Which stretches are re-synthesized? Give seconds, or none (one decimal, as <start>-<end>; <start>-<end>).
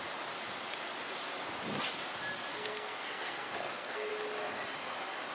2.5-4.1